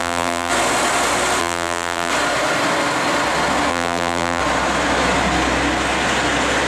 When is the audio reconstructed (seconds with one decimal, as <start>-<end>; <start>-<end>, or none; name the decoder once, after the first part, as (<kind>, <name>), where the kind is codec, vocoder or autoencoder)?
0.0-0.5 (vocoder, BigVGAN v2); 1.4-2.1; 3.7-4.4